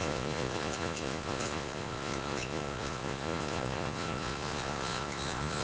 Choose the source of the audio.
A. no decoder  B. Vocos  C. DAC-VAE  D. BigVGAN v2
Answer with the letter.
B